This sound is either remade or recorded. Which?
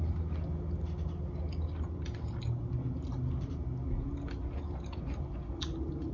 recorded